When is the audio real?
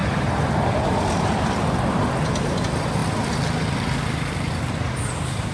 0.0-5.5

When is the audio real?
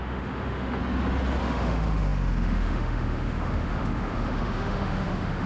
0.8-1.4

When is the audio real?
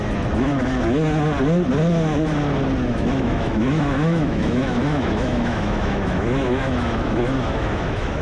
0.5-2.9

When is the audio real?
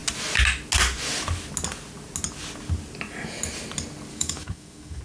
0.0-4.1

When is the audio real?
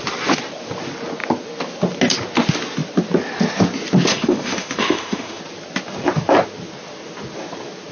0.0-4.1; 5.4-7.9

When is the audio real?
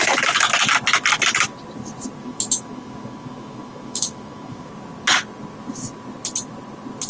0.0-2.2; 4.7-7.1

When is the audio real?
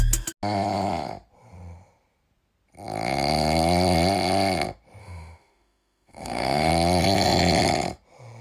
0.0-5.0; 6.7-8.4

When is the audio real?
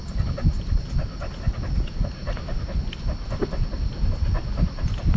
0.0-5.2